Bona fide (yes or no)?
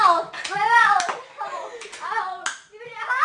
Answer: yes